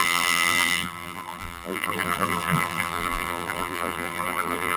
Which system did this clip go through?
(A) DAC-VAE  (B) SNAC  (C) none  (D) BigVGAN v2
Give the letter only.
D